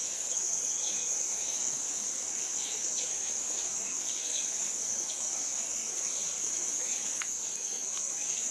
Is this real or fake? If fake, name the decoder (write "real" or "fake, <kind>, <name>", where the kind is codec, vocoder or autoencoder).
fake, codec, SNAC